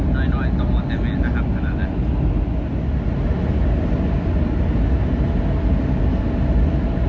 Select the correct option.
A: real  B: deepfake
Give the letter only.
A